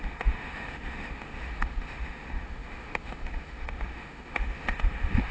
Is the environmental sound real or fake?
fake